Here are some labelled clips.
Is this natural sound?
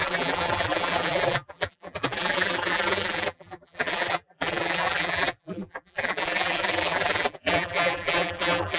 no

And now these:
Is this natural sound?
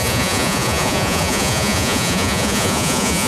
no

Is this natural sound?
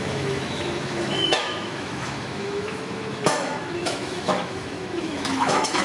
no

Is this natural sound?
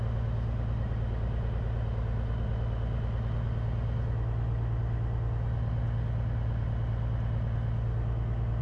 yes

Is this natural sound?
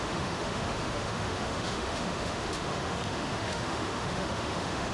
no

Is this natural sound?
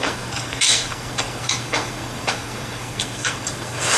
no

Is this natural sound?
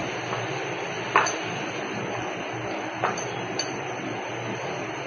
yes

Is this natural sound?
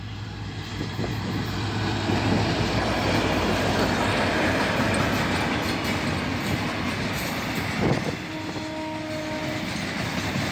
yes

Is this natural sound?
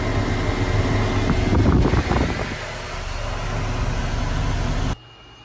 yes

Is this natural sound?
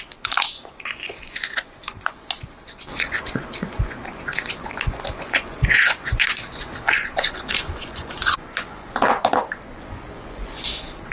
no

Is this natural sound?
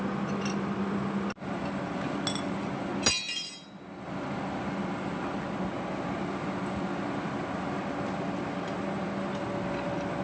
yes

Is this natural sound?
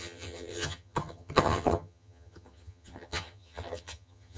no